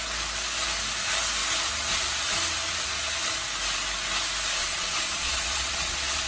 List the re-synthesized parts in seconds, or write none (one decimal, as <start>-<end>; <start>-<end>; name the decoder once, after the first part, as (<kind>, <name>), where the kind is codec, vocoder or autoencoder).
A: 4.6-6.3 (vocoder, Vocos)